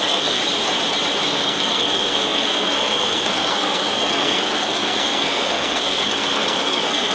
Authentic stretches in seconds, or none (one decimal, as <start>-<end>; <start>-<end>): 0.4-1.3